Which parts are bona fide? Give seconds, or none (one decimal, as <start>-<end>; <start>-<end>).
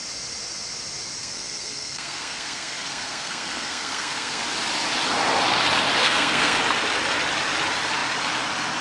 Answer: 0.0-1.2; 4.4-6.0; 6.6-8.8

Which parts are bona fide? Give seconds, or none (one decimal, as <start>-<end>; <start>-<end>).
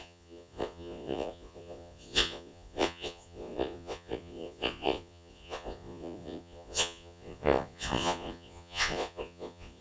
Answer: none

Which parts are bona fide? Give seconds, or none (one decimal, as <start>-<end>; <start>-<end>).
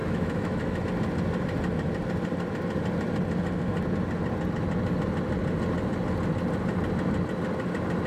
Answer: 0.8-8.1